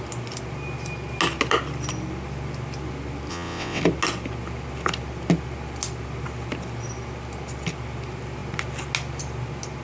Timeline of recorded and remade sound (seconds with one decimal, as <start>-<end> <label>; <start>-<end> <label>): 0.0-3.3 recorded; 3.3-3.8 remade; 3.8-9.8 recorded